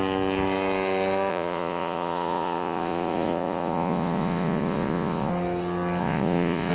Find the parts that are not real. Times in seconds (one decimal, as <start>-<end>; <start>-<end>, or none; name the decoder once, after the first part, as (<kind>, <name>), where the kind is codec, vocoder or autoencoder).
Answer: 1.3-5.3 (vocoder, Vocos); 6.0-6.7

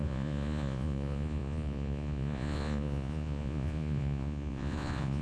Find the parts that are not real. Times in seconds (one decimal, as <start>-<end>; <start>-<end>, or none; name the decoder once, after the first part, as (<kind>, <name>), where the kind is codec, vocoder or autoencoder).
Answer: 0.0-5.2 (vocoder, Vocos)

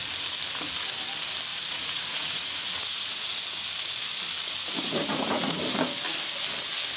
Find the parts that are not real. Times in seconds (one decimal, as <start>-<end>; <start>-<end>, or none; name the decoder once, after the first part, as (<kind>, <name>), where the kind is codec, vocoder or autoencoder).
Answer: 1.5-3.4 (vocoder, Vocos); 4.6-5.6

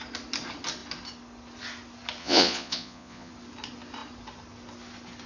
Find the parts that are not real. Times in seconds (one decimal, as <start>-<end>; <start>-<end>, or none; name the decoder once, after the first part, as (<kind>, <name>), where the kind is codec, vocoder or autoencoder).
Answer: 2.2-3.3 (vocoder, Vocos)

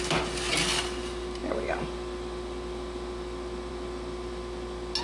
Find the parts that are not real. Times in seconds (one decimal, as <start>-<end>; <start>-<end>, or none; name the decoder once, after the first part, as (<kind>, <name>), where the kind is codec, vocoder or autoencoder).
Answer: none

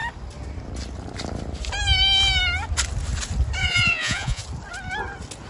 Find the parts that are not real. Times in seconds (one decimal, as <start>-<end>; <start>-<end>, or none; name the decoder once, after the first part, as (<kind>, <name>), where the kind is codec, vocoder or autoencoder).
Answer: 3.6-4.4 (vocoder, Vocos)

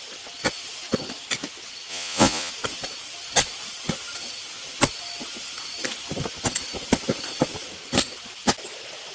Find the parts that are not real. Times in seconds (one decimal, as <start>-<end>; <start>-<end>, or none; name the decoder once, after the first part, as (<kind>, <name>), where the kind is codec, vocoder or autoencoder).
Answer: 1.9-2.5 (vocoder, Vocos)